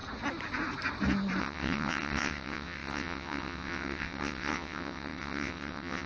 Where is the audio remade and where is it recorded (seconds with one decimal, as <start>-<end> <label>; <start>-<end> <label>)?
0.0-1.4 recorded; 1.4-6.1 remade